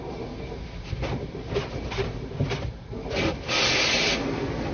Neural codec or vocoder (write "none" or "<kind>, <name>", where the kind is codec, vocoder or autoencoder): none